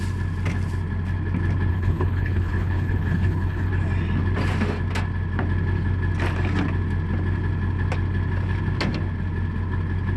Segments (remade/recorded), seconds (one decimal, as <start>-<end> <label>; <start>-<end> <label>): 0.0-1.7 recorded; 1.7-3.7 remade; 3.7-10.2 recorded